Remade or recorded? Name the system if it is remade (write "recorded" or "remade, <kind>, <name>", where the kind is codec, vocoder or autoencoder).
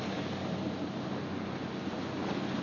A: recorded